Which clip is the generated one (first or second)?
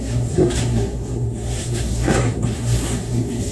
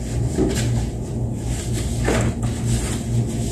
first